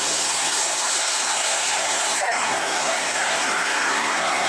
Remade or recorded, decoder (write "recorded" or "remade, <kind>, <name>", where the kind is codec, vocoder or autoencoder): remade, codec, SNAC